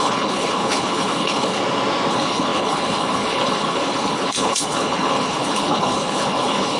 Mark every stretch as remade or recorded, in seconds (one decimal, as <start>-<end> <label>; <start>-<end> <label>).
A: 0.0-1.6 remade; 1.6-2.1 recorded; 2.1-6.8 remade